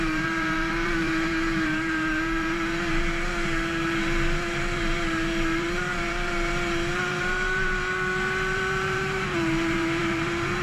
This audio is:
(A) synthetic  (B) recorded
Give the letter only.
A